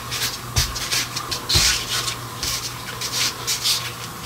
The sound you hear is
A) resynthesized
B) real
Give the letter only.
B